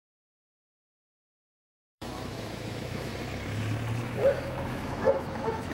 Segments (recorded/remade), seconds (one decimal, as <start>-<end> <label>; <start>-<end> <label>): 0.0-3.1 remade; 3.1-4.0 recorded; 4.0-5.7 remade